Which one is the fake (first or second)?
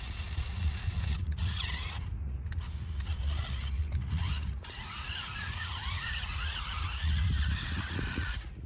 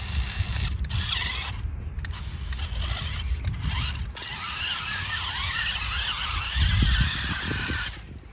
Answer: first